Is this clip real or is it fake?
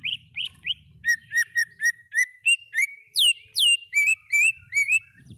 fake